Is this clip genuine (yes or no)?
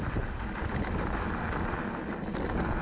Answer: yes